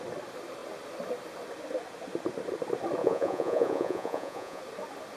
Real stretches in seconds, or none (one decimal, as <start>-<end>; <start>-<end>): 0.0-3.0; 4.6-5.2